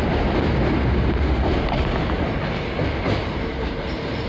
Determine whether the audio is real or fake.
real